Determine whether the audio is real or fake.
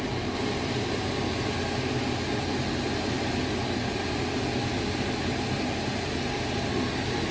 real